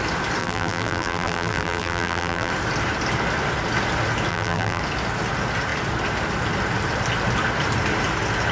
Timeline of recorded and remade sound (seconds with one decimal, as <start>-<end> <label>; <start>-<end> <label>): 0.0-0.4 recorded; 0.4-2.5 remade; 2.5-4.3 recorded; 4.3-4.8 remade; 4.8-8.5 recorded